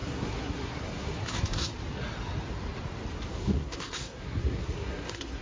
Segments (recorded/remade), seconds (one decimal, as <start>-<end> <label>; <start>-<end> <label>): 0.0-1.7 remade; 1.7-3.3 recorded; 3.3-5.4 remade